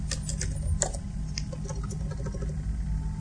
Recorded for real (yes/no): yes